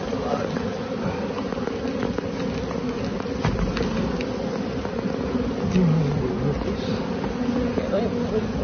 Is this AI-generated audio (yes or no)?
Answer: no